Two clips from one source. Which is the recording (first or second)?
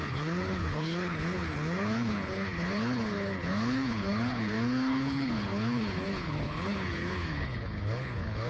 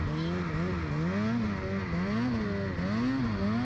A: second